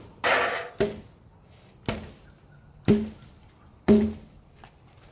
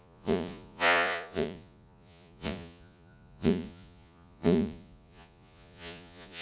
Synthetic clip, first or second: second